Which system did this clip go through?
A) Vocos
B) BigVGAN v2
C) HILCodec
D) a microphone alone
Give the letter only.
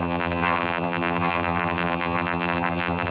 B